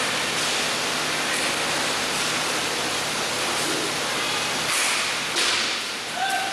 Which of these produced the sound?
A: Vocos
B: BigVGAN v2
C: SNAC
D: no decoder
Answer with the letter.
D